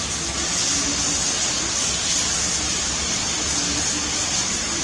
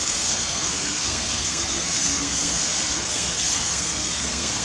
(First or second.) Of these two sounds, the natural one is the first